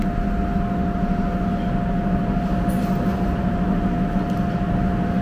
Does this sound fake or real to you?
real